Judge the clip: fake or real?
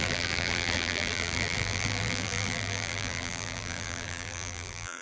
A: fake